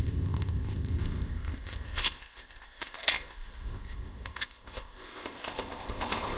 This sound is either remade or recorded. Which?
remade